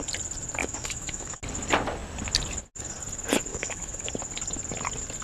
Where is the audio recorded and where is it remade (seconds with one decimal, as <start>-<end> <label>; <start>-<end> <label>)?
0.0-0.6 recorded; 0.6-1.4 remade; 1.4-3.5 recorded; 3.5-4.1 remade; 4.1-5.2 recorded